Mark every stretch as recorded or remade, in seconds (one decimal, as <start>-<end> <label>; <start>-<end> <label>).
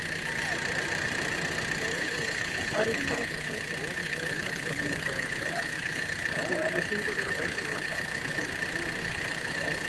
0.0-1.9 recorded; 1.9-3.6 remade; 3.6-4.0 recorded; 4.0-8.5 remade; 8.5-9.0 recorded; 9.0-9.9 remade